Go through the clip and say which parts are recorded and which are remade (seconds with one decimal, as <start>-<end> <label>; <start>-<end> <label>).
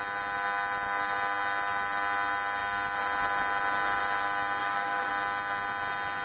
0.0-4.6 recorded; 4.6-5.1 remade; 5.1-6.2 recorded